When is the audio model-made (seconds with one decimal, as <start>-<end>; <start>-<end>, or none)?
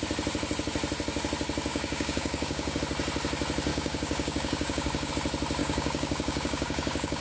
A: 1.7-2.8; 3.7-5.1; 5.6-7.2